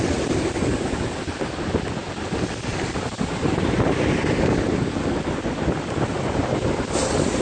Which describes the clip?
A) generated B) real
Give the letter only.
B